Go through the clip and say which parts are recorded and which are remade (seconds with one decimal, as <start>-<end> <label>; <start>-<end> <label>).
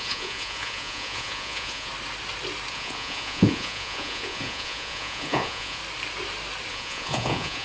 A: 0.0-1.9 remade; 1.9-2.7 recorded; 2.7-5.8 remade; 5.8-6.7 recorded; 6.7-7.6 remade